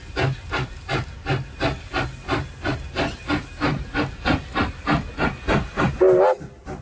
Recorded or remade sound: recorded